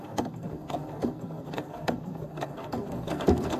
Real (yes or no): no